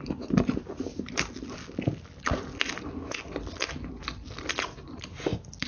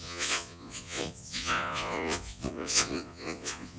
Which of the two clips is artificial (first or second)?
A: second